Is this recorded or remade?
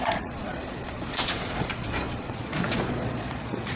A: remade